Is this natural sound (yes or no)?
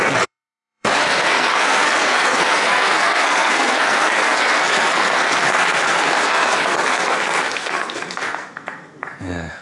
no